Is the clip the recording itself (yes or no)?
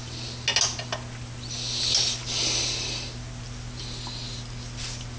yes